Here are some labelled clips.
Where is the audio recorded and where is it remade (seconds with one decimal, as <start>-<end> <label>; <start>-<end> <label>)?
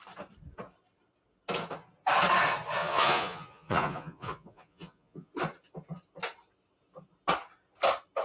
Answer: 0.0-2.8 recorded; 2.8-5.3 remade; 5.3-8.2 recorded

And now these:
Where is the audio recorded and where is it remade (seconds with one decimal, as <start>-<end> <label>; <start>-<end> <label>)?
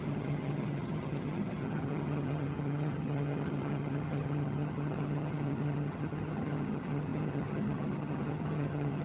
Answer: 0.0-9.0 remade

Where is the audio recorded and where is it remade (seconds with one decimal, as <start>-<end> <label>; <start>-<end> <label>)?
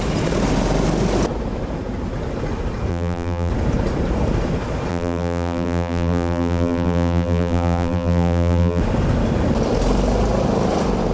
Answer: 0.0-2.9 recorded; 2.9-3.5 remade; 3.5-4.9 recorded; 4.9-8.8 remade; 8.8-11.1 recorded